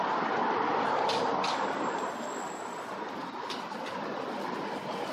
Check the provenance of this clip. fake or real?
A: real